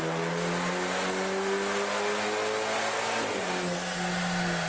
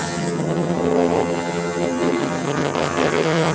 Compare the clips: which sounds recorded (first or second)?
first